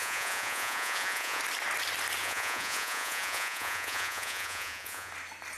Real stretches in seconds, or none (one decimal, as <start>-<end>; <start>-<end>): 1.4-2.2; 5.1-5.6